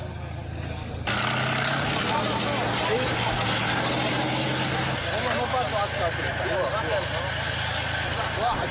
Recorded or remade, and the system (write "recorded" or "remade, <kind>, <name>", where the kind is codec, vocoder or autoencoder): recorded